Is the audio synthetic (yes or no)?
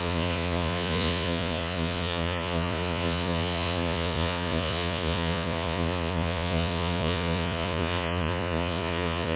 yes